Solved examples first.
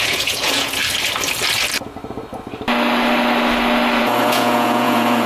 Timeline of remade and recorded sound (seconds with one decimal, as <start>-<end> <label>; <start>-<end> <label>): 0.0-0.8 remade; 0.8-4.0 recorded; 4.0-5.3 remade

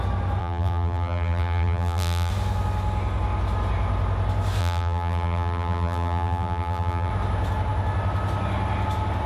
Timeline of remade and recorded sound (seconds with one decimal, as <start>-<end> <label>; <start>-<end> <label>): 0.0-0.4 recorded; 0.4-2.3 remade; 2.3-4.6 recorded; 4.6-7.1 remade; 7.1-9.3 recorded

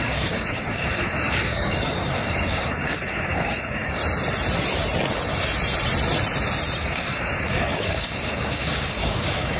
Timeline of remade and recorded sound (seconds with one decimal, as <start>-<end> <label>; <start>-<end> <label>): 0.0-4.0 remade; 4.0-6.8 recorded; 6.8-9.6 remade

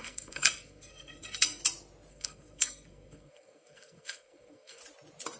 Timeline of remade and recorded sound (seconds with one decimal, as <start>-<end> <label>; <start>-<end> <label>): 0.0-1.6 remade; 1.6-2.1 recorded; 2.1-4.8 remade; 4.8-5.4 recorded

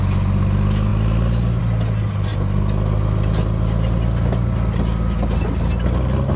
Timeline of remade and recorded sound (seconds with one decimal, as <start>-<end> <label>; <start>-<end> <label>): 0.0-6.4 recorded

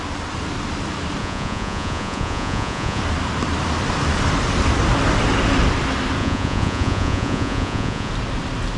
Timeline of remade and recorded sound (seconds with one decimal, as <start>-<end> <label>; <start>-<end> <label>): 0.0-1.2 recorded; 1.2-3.0 remade; 3.0-6.2 recorded; 6.2-8.1 remade; 8.1-8.8 recorded

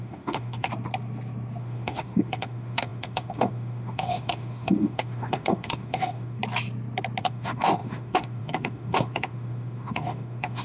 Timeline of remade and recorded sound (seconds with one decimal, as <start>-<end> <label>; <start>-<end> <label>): 0.0-0.7 remade; 0.7-1.6 recorded; 1.6-6.4 remade; 6.4-7.2 recorded; 7.2-10.6 remade